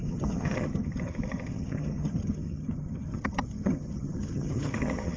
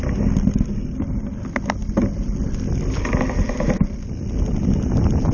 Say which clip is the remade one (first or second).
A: first